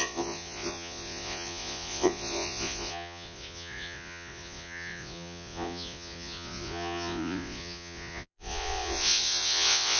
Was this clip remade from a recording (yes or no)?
yes